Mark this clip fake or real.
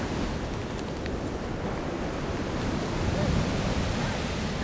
real